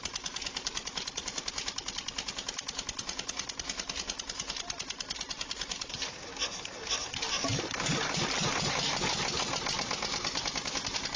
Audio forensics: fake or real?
real